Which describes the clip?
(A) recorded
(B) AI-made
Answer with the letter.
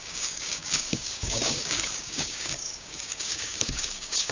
B